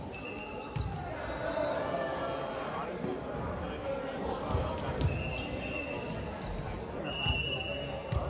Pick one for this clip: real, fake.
real